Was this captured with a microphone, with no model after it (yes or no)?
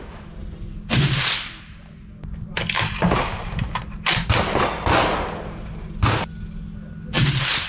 yes